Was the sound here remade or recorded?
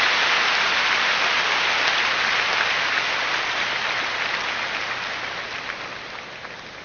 recorded